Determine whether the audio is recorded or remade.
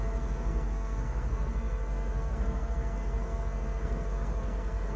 remade